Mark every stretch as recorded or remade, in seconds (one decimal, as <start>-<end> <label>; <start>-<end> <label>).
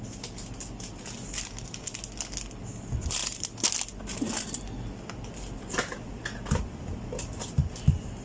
0.0-8.2 recorded